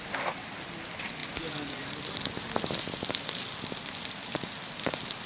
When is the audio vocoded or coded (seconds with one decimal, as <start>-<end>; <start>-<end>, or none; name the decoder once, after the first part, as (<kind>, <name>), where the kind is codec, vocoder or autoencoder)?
none